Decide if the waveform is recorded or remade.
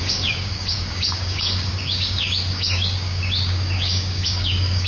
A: remade